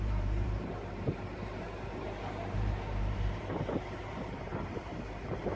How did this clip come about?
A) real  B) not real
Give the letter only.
B